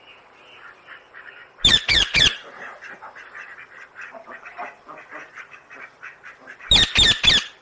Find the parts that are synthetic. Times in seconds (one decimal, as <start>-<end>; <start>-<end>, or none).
1.7-3.2